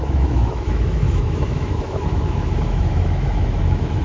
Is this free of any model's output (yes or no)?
no